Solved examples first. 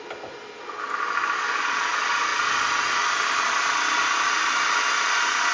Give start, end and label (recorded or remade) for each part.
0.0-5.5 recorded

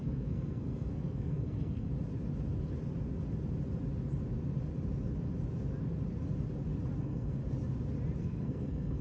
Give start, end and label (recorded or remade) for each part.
0.0-1.9 remade; 1.9-7.0 recorded; 7.0-7.4 remade; 7.4-8.2 recorded; 8.2-9.0 remade

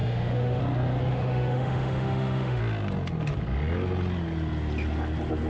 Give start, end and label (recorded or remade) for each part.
0.0-0.6 remade; 0.6-1.1 recorded; 1.1-2.6 remade; 2.6-5.5 recorded

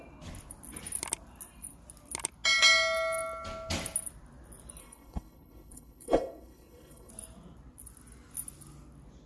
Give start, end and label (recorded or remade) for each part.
0.0-4.8 recorded; 4.8-7.1 remade; 7.1-9.3 recorded

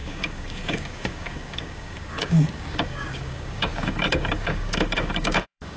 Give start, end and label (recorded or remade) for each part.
0.0-5.8 remade

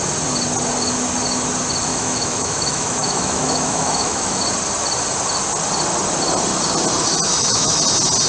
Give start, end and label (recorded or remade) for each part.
0.0-1.9 recorded; 1.9-4.4 remade; 4.4-7.3 recorded; 7.3-7.8 remade; 7.8-8.3 recorded

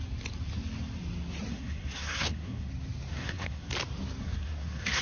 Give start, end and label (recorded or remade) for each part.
0.0-1.5 recorded; 1.5-2.7 remade; 2.7-3.1 recorded; 3.1-3.7 remade; 3.7-4.2 recorded; 4.2-5.0 remade

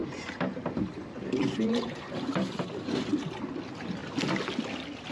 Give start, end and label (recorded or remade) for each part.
0.0-3.1 remade; 3.1-5.1 recorded